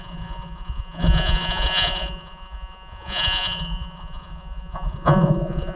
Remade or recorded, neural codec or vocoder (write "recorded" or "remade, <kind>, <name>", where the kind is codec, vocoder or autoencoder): remade, vocoder, Vocos